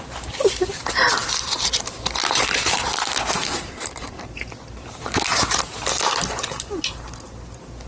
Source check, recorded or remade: remade